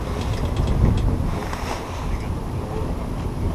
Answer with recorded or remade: recorded